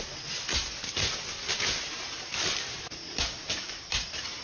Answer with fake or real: real